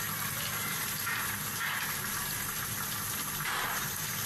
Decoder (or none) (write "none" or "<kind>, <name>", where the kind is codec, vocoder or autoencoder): none